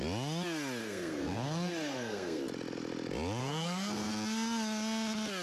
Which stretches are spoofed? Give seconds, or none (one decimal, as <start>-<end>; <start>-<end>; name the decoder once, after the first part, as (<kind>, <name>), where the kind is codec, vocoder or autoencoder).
0.8-2.4 (codec, SNAC); 3.4-4.1